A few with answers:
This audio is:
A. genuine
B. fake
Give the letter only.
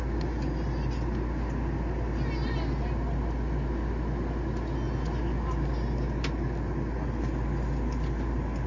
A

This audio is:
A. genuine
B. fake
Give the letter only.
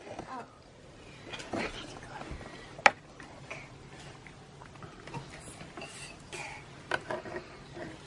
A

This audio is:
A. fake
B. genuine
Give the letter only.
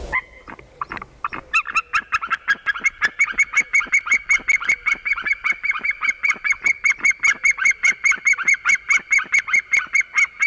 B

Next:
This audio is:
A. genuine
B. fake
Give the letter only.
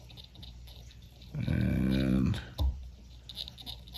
A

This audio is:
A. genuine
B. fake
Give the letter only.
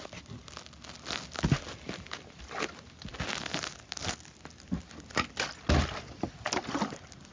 A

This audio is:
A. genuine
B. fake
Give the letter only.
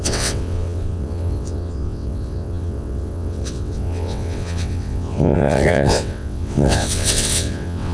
B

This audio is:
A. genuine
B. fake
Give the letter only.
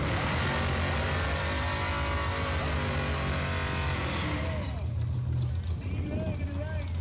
A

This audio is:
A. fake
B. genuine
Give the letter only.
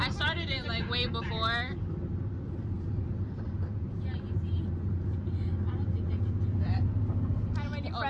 B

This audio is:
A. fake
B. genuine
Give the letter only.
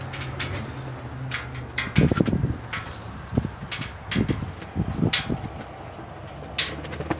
B